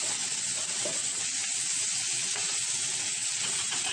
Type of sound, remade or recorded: remade